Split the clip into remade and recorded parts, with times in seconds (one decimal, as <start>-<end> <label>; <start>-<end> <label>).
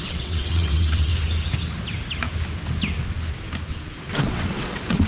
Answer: 0.0-1.1 remade; 1.1-4.2 recorded; 4.2-5.1 remade